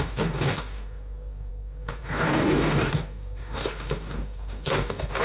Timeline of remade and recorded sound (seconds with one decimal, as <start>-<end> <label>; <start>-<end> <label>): 0.0-5.2 remade